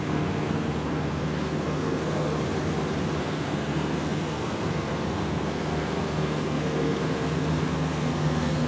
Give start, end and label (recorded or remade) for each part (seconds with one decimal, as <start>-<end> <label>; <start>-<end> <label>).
0.0-2.3 remade; 2.3-3.2 recorded; 3.2-8.7 remade